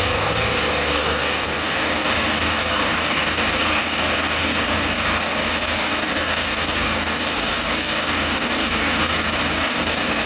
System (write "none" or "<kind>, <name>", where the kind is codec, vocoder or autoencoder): codec, DAC